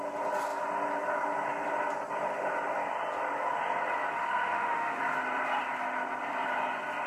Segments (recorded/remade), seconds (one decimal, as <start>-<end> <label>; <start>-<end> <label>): 0.0-4.1 recorded; 4.1-5.0 remade; 5.0-7.1 recorded